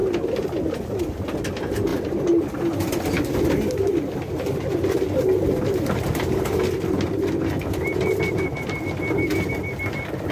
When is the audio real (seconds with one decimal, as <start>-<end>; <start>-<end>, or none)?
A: 0.0-10.3